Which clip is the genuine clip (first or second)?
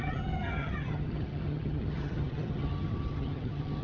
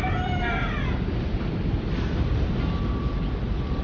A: second